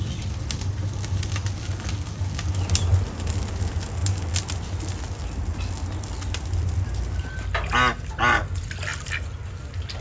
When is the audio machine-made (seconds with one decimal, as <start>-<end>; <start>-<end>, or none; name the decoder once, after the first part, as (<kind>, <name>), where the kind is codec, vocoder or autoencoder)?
none